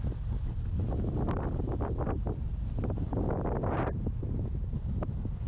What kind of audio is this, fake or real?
real